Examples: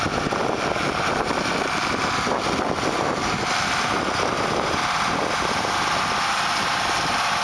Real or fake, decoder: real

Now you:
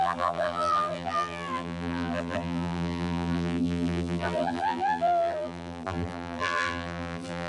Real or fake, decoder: fake, vocoder, BigVGAN v2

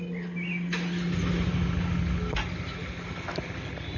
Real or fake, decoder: real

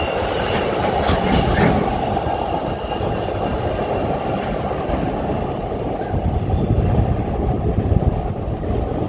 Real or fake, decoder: real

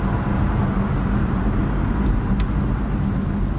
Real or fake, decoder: real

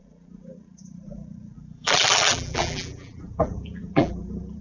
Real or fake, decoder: fake, vocoder, BigVGAN v2